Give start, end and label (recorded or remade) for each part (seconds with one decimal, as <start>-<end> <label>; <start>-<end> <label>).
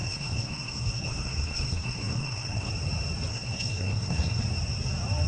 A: 0.0-2.7 remade; 2.7-3.3 recorded; 3.3-4.4 remade; 4.4-5.3 recorded